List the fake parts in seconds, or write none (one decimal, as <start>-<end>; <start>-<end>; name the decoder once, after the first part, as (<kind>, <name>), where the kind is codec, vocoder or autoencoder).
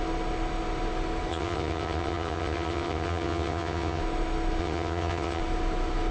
1.3-4.0 (vocoder, HiFi-GAN); 4.6-5.4